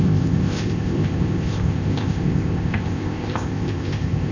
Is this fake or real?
fake